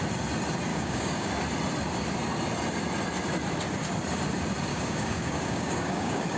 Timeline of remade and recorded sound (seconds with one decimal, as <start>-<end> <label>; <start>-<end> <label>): 0.0-0.7 recorded; 0.7-1.3 remade; 1.3-4.7 recorded; 4.7-6.4 remade